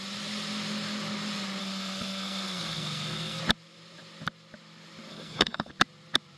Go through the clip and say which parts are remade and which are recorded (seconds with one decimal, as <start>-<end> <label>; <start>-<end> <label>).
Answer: 0.0-1.6 recorded; 1.6-3.4 remade; 3.4-5.1 recorded; 5.1-5.7 remade; 5.7-6.4 recorded